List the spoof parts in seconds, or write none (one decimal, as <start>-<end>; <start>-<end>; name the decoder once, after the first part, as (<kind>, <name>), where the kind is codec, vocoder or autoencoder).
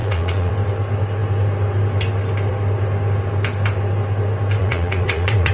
0.0-0.5 (vocoder, Vocos); 4.6-5.5